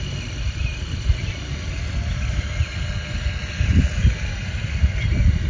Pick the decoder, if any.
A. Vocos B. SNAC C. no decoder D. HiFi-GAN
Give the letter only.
C